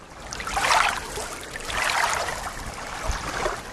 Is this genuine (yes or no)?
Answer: yes